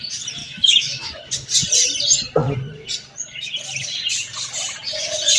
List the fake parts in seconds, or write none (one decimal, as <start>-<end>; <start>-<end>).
0.4-1.2